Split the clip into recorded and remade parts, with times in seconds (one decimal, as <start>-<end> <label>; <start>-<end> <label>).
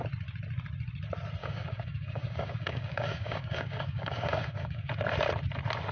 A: 0.0-1.4 recorded; 1.4-4.9 remade; 4.9-5.9 recorded